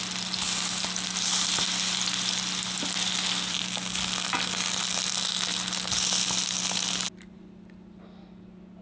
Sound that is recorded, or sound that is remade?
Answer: recorded